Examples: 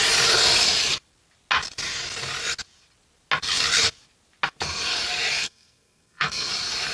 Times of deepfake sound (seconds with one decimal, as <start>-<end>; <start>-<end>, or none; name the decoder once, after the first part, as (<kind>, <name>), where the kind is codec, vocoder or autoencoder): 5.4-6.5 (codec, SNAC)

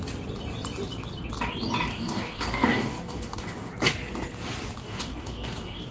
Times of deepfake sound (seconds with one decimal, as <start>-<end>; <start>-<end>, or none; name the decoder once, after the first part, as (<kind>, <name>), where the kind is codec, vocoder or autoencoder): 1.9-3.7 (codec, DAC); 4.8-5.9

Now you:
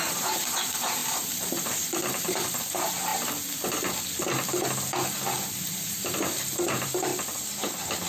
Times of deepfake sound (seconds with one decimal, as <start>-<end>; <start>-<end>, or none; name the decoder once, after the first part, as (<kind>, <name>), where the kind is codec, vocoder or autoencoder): 0.0-3.1 (vocoder, BigVGAN v2); 5.5-7.1

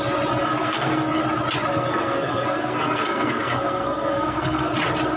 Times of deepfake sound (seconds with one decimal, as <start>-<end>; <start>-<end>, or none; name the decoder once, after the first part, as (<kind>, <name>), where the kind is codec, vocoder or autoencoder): 0.4-1.1 (codec, SNAC); 1.7-4.7

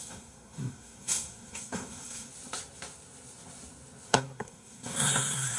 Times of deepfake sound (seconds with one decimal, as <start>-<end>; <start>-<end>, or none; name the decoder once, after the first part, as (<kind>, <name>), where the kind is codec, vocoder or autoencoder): 0.0-2.3 (codec, SNAC); 4.1-5.6

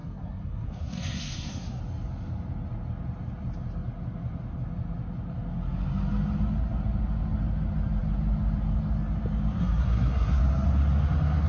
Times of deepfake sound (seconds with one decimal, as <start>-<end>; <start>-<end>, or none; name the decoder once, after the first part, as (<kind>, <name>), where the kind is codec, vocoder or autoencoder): 0.0-1.8 (codec, SNAC); 9.6-10.4